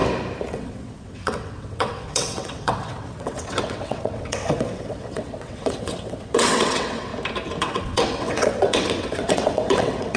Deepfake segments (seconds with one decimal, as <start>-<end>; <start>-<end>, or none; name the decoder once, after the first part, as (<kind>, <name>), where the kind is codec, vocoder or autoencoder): 0.5-7.1 (vocoder, WaveNeXt); 7.6-10.2